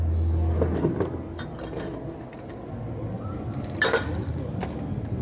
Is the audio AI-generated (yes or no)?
no